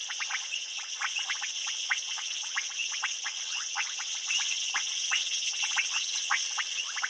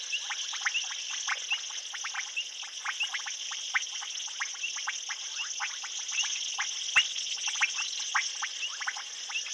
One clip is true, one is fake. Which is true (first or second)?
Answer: second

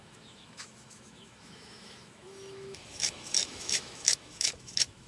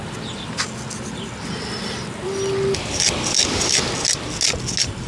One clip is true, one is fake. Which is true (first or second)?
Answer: second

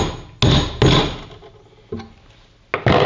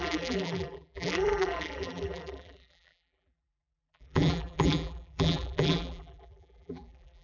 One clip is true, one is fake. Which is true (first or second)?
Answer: first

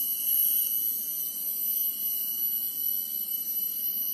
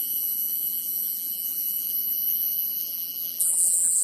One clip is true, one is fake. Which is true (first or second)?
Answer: first